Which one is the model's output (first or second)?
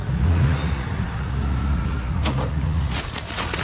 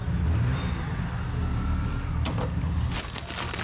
first